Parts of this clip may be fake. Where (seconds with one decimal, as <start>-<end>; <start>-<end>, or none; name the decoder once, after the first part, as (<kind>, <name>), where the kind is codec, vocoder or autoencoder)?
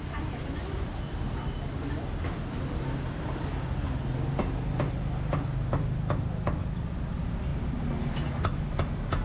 none